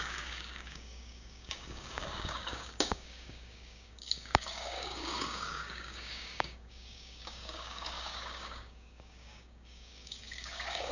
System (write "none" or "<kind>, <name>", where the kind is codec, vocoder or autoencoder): codec, DAC